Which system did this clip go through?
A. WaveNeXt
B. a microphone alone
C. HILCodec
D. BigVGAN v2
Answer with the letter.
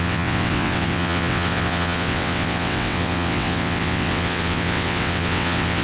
A